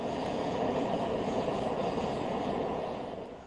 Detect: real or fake fake